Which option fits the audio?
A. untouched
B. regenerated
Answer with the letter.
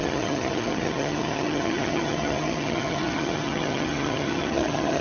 B